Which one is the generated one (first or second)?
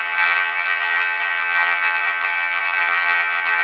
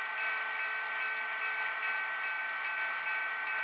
first